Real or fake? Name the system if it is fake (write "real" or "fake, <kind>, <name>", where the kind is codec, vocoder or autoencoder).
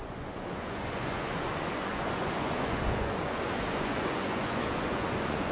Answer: fake, vocoder, Vocos